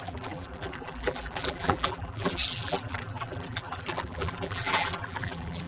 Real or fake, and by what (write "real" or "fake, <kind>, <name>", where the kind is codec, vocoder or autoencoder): fake, vocoder, BigVGAN v2